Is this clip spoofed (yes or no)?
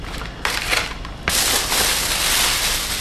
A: no